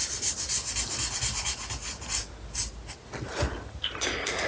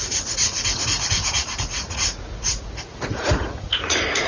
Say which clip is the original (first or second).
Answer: first